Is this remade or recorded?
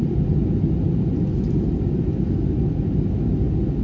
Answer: recorded